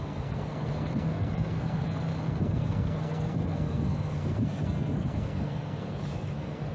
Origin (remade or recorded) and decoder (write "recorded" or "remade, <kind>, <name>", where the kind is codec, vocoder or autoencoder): remade, codec, SNAC